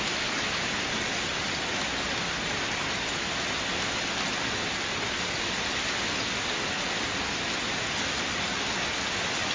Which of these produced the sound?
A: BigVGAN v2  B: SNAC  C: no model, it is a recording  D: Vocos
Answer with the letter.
C